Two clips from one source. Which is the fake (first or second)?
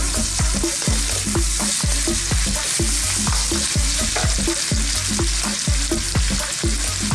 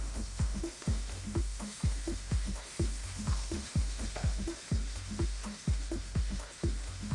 second